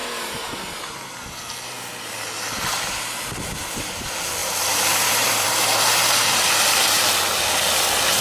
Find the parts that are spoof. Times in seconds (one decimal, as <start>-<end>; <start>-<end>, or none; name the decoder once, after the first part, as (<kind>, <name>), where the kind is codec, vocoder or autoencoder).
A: 0.0-0.6 (vocoder, BigVGAN v2); 4.4-7.0